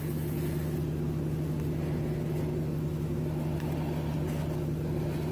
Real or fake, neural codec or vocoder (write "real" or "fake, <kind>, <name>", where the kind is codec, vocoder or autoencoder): real